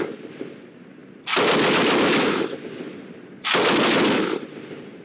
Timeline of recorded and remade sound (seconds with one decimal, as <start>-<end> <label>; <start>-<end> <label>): 0.0-5.0 recorded